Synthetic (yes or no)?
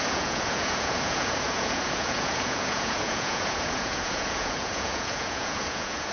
yes